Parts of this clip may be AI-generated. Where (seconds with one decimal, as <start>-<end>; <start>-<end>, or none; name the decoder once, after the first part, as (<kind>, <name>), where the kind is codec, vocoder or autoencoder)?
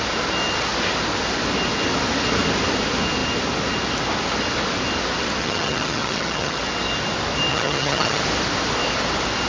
5.4-6.6 (vocoder, HiFi-GAN); 7.5-8.2